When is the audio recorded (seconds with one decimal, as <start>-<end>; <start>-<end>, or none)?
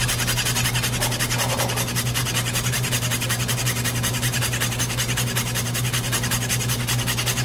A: 0.0-7.4